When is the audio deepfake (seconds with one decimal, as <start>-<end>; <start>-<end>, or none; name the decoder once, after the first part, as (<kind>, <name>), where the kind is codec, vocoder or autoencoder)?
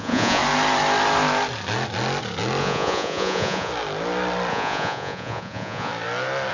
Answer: 0.0-0.4 (vocoder, Vocos); 2.6-3.7; 4.5-5.9